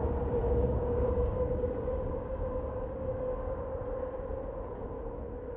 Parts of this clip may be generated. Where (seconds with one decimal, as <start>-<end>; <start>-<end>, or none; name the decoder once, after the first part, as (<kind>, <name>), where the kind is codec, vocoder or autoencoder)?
0.4-3.8 (codec, DAC)